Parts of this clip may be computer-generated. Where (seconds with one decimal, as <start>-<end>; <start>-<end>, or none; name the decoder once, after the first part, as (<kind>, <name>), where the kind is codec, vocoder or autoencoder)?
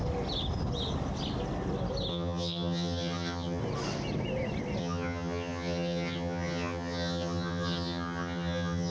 2.1-3.6 (vocoder, HiFi-GAN); 4.8-8.9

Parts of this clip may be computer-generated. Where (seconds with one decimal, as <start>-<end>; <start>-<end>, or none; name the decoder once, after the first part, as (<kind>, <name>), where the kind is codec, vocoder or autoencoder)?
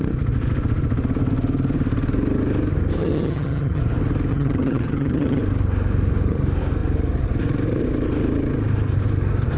3.0-3.8 (vocoder, HiFi-GAN); 4.3-5.4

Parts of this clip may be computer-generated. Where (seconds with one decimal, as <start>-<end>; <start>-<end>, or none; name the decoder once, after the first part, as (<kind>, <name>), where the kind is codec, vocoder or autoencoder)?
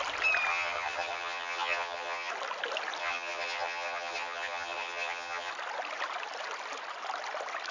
0.5-2.3 (vocoder, HiFi-GAN); 3.0-5.5